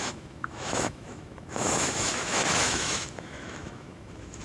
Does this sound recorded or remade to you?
remade